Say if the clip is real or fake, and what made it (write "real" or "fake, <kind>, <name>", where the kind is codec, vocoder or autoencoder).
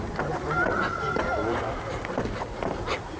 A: real